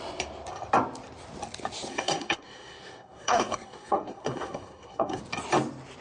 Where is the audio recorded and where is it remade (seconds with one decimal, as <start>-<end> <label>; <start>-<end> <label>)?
0.0-1.9 recorded; 1.9-5.2 remade; 5.2-6.0 recorded